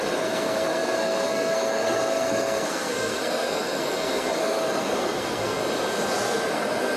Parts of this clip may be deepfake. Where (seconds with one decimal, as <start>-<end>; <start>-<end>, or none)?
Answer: 0.0-5.6; 6.5-7.0

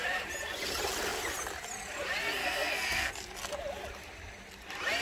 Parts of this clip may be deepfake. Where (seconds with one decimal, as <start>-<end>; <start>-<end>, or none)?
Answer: 2.4-3.1